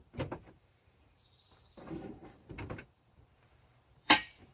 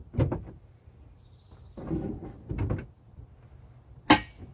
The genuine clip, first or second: second